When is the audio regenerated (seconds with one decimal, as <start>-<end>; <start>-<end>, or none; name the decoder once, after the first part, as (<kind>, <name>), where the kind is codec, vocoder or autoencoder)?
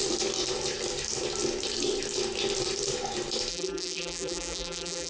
3.5-5.1 (vocoder, BigVGAN v2)